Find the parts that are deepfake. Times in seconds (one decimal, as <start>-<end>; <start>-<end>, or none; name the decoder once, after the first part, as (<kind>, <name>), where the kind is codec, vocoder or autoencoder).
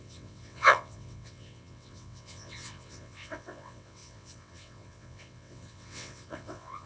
0.0-6.9 (vocoder, WaveNeXt)